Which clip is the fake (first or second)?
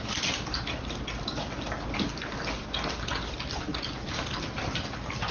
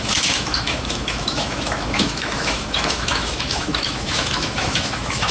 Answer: second